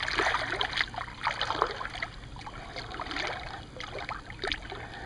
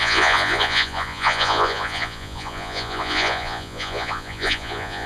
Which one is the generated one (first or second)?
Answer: second